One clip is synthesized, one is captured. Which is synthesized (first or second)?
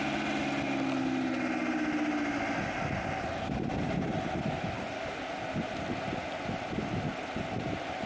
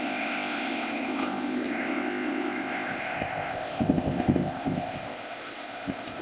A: second